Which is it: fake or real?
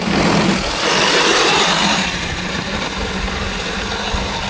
fake